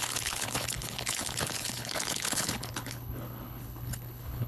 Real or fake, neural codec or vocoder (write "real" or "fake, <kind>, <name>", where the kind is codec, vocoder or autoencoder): fake, codec, HILCodec